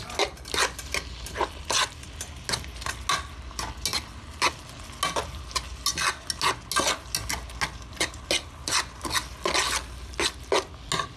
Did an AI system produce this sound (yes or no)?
no